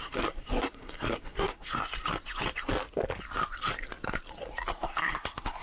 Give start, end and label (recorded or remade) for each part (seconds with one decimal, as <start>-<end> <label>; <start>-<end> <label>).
0.0-2.0 remade; 2.0-4.7 recorded; 4.7-5.6 remade